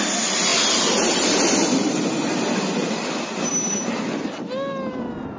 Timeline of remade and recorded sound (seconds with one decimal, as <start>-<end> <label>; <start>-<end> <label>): 0.0-5.4 recorded